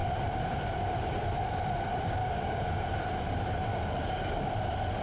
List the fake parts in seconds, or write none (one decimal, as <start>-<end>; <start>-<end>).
2.2-2.9; 3.7-4.5